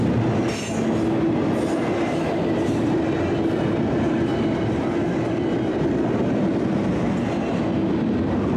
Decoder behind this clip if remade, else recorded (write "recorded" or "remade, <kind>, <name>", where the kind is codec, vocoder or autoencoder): recorded